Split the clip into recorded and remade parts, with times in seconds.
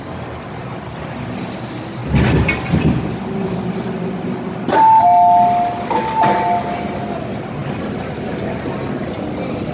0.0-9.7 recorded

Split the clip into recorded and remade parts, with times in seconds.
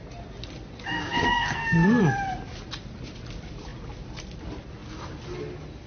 0.0-0.9 recorded; 0.9-2.0 remade; 2.0-5.9 recorded